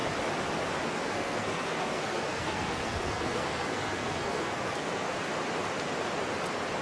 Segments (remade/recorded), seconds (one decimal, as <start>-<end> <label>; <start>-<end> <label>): 0.0-1.0 recorded; 1.0-5.1 remade; 5.1-6.8 recorded